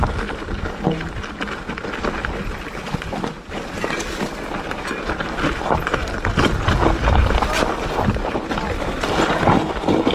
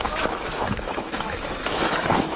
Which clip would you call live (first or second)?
first